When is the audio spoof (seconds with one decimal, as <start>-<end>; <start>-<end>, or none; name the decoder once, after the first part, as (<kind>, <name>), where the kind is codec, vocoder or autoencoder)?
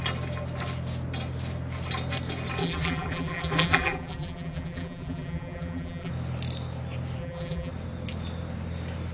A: 2.6-6.1 (vocoder, BigVGAN v2); 7.2-7.7